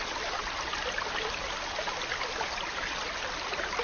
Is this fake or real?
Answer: real